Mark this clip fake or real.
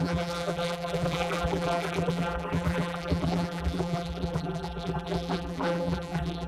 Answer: fake